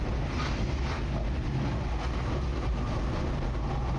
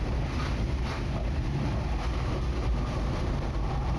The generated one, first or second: second